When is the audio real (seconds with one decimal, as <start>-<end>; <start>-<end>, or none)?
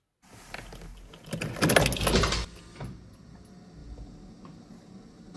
0.0-5.4